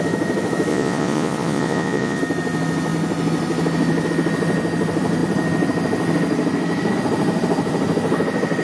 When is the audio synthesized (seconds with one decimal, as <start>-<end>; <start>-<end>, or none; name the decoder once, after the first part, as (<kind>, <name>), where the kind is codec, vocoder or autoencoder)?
0.7-2.2 (vocoder, Vocos)